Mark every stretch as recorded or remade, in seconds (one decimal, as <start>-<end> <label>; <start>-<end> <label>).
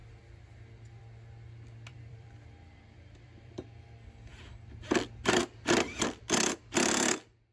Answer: 0.0-1.9 recorded; 1.9-3.5 remade; 3.5-7.5 recorded